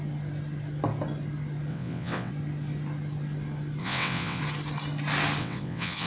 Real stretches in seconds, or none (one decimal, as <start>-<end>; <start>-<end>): 0.0-1.7; 2.3-3.8; 4.4-5.4